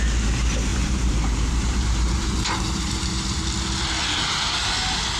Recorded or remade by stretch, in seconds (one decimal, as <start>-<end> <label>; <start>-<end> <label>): 0.0-0.7 recorded; 0.7-3.4 remade; 3.4-5.2 recorded